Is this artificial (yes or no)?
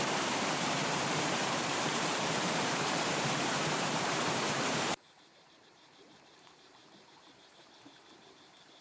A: yes